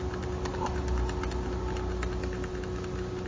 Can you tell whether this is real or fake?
real